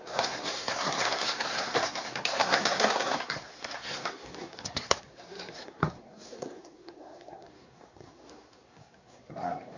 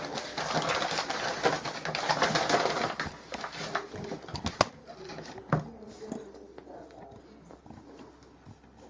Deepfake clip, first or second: first